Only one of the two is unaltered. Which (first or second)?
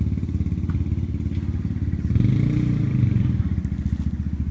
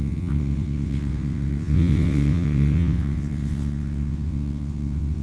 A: first